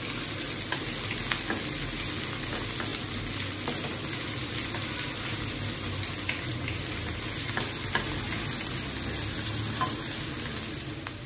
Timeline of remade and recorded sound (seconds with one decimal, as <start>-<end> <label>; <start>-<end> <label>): 0.0-11.3 recorded